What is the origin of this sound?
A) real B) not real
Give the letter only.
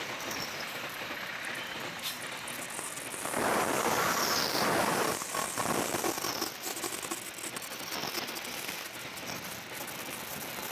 A